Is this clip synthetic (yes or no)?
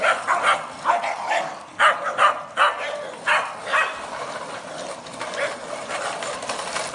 no